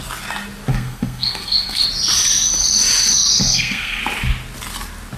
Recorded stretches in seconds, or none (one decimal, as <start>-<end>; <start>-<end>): 0.0-0.7; 1.8-3.4; 4.0-5.2